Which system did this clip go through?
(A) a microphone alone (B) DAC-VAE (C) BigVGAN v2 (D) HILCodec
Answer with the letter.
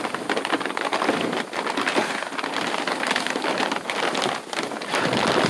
A